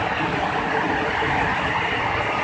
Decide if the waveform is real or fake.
real